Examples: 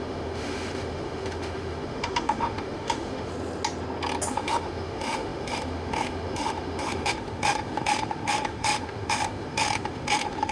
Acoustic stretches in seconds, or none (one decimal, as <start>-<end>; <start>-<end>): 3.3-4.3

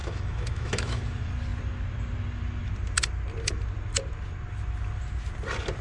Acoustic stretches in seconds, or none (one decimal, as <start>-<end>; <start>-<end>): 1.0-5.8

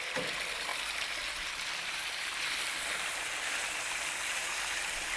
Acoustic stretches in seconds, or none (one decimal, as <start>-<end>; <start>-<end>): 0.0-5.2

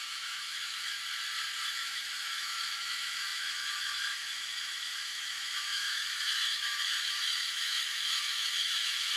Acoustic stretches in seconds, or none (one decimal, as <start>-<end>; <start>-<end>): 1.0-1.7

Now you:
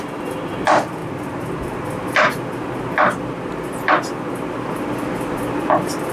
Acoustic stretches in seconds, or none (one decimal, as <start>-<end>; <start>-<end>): 0.0-6.1

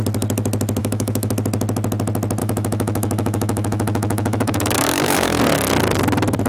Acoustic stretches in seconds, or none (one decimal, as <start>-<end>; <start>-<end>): 0.0-0.8; 1.3-2.4; 5.4-6.5

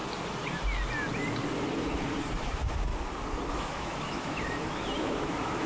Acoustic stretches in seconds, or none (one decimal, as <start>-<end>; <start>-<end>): 0.0-2.4; 2.9-3.5

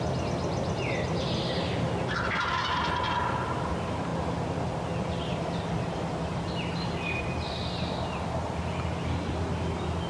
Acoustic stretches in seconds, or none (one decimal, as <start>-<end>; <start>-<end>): 0.0-10.1